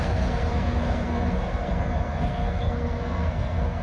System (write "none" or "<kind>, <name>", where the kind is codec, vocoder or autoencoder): codec, SNAC